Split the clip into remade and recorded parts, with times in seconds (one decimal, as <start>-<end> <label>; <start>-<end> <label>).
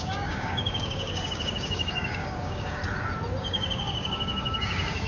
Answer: 0.0-2.8 remade; 2.8-3.4 recorded; 3.4-5.1 remade